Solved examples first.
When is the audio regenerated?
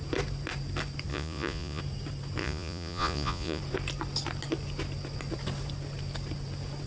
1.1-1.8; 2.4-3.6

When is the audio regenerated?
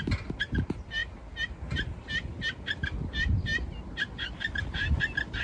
none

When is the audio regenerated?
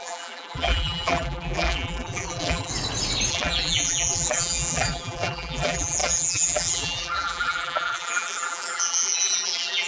0.0-2.7; 3.3-9.9